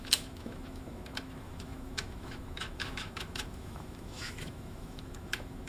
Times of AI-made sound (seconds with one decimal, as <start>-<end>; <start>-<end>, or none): 0.0-5.7